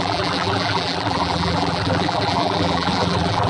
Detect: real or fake fake